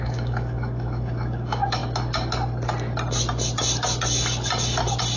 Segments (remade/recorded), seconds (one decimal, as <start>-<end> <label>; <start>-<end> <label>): 0.0-1.8 remade; 1.8-5.2 recorded